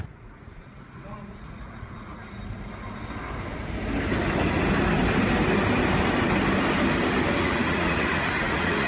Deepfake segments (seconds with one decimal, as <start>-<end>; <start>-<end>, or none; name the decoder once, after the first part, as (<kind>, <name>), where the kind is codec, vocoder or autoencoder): 0.0-2.2 (vocoder, Vocos); 7.4-8.9